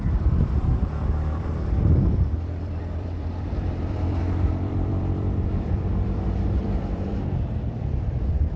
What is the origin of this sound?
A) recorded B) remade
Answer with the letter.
B